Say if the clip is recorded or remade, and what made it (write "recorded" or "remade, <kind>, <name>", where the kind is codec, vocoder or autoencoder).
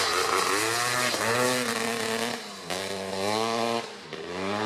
recorded